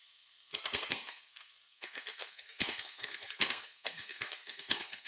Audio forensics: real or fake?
fake